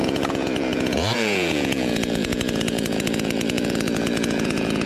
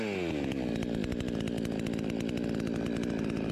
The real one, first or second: second